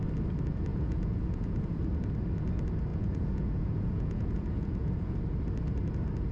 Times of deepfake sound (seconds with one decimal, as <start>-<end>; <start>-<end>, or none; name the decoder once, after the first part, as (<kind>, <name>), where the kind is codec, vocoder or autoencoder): 0.7-1.8 (vocoder, Vocos); 2.9-5.2